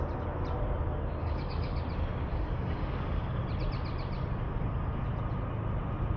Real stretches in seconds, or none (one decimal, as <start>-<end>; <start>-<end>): 0.0-1.2; 1.8-2.3; 3.4-6.2